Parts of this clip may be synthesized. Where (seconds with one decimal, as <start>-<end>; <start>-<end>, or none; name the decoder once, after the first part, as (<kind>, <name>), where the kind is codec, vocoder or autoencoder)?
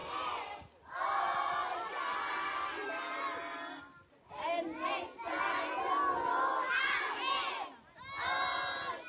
none